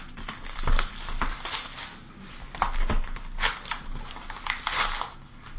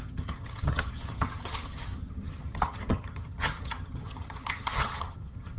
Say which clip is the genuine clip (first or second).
first